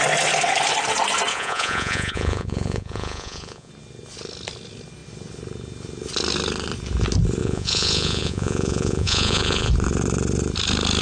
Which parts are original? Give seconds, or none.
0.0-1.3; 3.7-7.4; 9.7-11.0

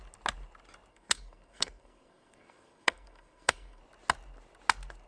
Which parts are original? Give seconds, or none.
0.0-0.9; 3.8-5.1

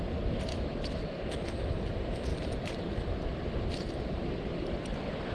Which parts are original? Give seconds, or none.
0.0-0.5; 1.2-5.3

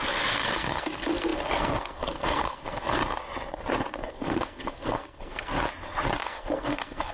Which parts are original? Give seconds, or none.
3.0-4.1; 5.5-6.2

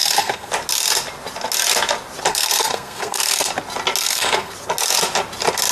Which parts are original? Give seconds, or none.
0.5-2.3; 3.5-4.0; 4.5-5.7

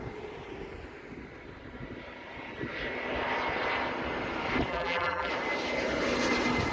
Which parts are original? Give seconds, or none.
0.0-4.7; 5.3-6.7

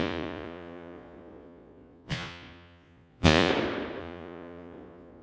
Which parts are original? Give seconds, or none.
3.5-4.0

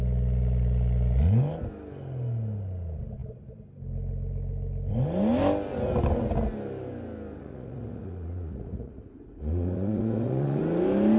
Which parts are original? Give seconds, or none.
0.0-7.4; 10.6-11.2